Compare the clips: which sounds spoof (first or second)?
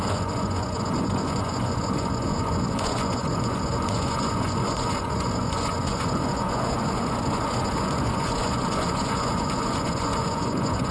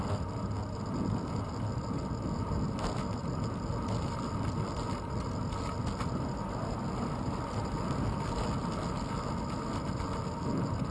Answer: first